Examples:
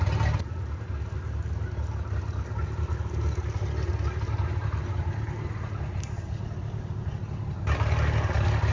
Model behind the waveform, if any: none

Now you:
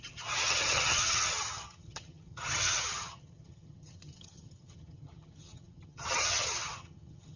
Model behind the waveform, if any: vocoder, HiFi-GAN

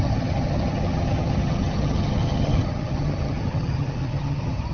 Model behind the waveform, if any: vocoder, HiFi-GAN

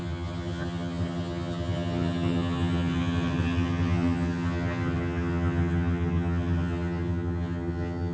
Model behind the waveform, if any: vocoder, HiFi-GAN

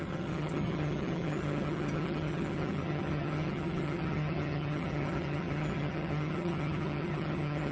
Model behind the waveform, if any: vocoder, HiFi-GAN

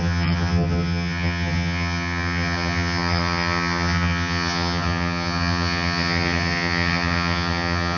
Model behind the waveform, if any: vocoder, HiFi-GAN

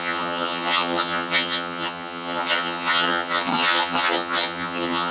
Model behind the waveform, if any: vocoder, HiFi-GAN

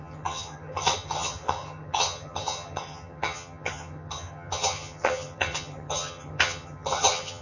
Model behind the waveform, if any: vocoder, HiFi-GAN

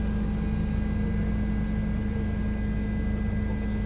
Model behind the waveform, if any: none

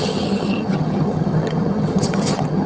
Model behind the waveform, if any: vocoder, HiFi-GAN